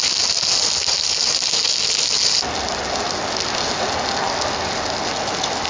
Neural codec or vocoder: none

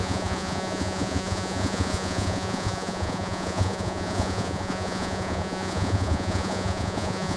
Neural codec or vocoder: vocoder, Vocos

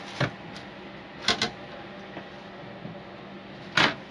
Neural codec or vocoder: none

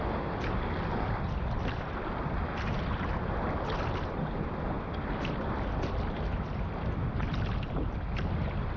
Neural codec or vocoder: none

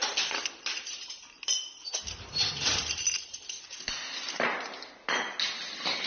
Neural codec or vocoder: none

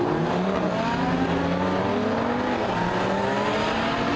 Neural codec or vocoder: none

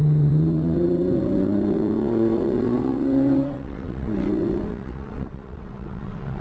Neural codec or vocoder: vocoder, WaveNeXt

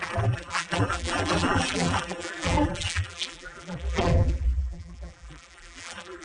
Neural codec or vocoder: vocoder, BigVGAN v2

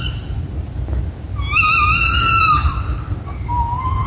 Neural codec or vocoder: none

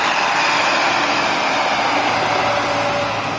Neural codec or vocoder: none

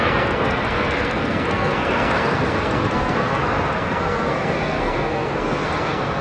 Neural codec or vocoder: codec, SNAC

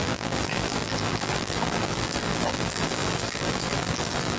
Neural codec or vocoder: vocoder, BigVGAN v2